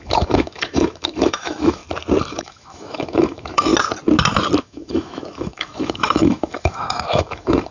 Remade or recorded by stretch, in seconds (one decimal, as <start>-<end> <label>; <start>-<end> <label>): 0.0-1.8 remade; 1.8-2.3 recorded; 2.3-3.7 remade; 3.7-4.6 recorded; 4.6-7.7 remade